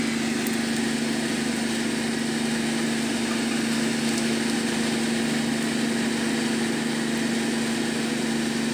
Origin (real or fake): real